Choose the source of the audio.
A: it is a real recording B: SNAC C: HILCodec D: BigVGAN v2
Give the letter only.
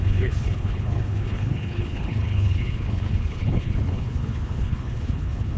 C